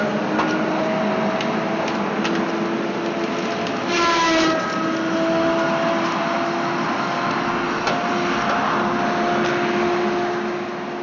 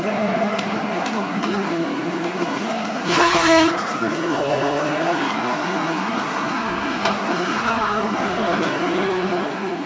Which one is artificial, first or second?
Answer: second